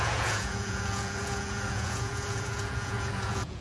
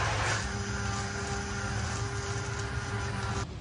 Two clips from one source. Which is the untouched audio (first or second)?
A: second